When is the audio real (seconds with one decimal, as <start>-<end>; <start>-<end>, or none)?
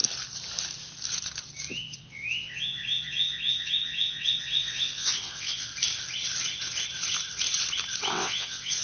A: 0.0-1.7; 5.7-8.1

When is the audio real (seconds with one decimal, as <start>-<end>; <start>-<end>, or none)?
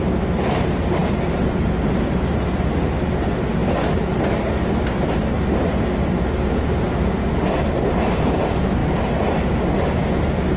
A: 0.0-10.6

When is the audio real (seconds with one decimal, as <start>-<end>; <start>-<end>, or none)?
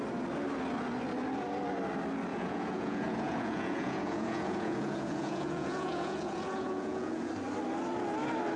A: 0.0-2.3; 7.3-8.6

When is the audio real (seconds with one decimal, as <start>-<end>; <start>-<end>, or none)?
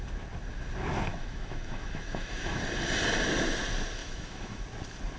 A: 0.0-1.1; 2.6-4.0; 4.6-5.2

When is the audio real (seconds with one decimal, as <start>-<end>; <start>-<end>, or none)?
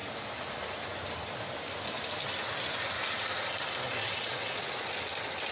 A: 0.0-4.0; 4.7-5.5